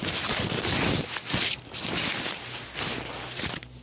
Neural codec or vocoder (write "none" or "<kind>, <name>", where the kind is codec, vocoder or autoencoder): none